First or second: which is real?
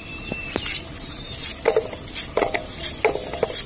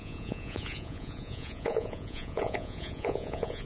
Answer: first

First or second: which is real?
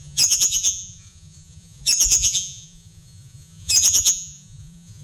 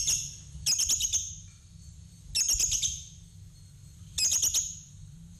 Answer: second